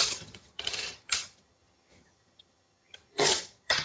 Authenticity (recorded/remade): remade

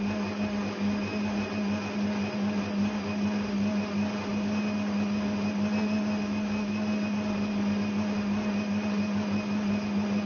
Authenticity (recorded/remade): recorded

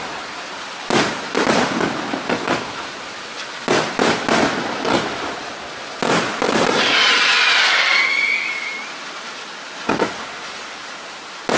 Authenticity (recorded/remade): recorded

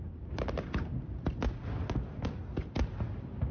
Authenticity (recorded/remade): recorded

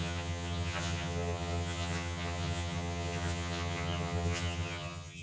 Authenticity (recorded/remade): remade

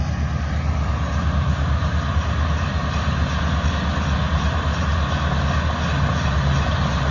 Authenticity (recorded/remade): recorded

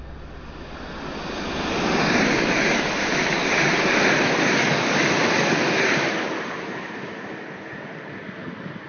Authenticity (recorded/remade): recorded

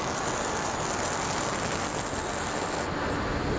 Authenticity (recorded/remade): recorded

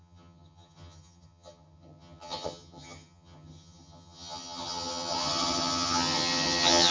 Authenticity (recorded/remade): remade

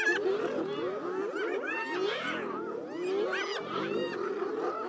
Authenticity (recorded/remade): recorded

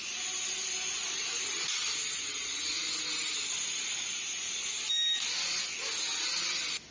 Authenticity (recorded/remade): recorded